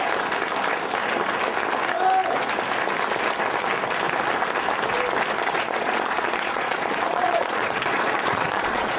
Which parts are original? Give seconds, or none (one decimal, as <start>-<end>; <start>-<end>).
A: 0.0-5.5